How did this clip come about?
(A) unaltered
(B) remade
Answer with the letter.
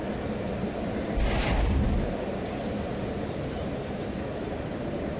A